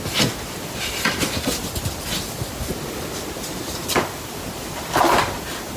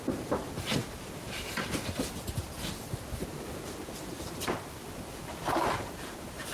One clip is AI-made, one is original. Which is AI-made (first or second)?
second